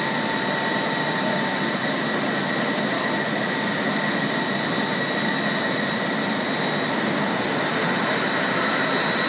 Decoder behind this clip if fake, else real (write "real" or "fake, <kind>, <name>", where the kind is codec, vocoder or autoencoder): real